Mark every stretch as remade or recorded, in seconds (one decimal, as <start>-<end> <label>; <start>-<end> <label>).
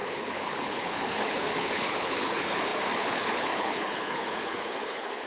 0.0-5.3 remade